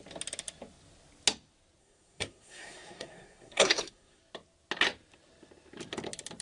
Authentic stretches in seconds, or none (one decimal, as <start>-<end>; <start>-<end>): 0.0-1.8; 4.2-6.4